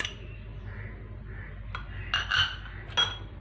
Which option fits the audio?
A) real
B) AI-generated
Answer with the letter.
A